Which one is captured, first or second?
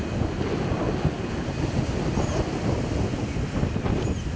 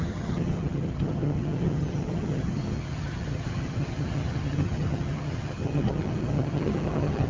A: first